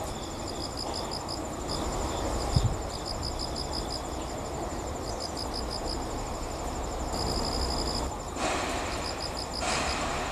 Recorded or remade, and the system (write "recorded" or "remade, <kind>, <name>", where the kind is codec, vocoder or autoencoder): recorded